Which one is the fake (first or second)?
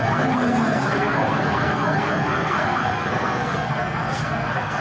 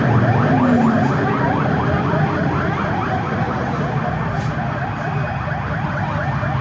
first